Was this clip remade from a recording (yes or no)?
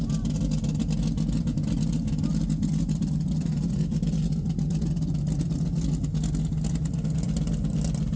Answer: no